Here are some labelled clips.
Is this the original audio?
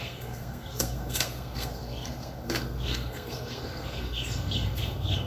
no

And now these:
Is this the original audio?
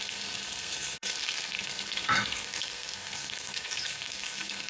no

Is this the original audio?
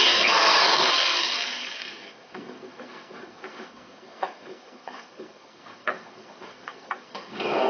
no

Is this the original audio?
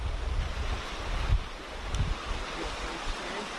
yes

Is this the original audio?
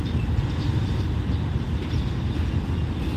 yes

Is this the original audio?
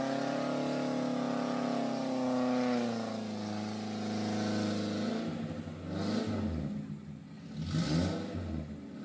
yes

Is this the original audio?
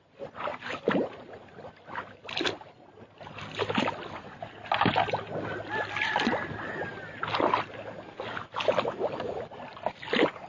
yes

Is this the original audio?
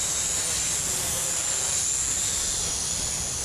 yes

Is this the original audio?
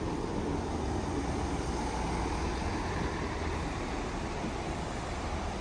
yes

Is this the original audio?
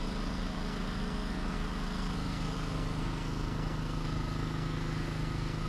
no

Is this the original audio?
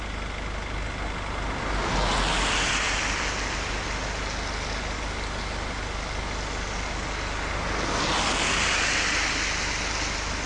yes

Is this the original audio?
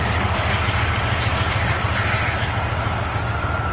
yes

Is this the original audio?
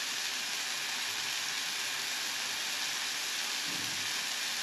yes